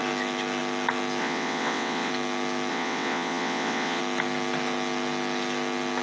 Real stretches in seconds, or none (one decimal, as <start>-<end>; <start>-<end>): 0.0-1.2; 2.1-2.7; 4.0-6.0